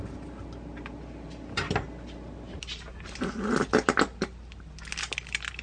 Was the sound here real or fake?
real